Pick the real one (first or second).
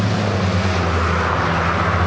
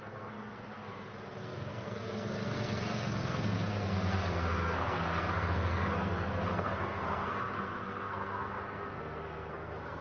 first